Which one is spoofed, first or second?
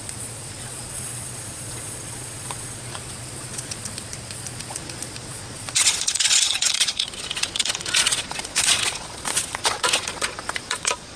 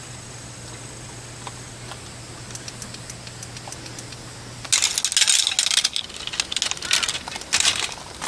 first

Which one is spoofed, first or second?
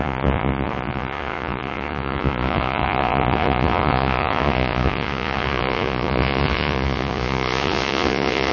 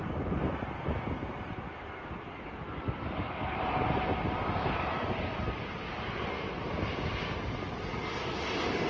first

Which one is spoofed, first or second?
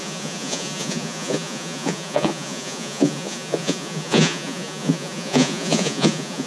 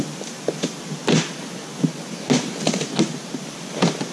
first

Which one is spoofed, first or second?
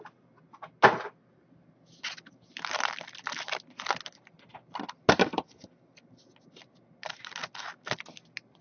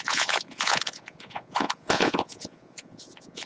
second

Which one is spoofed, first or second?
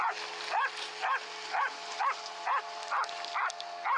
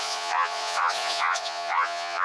second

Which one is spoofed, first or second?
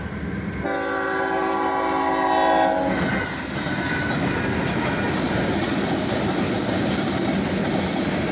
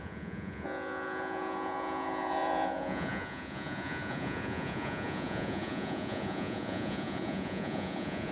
second